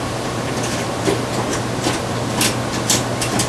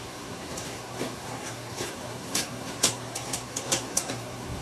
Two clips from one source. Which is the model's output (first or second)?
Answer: second